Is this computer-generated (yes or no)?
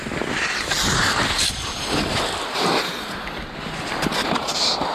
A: yes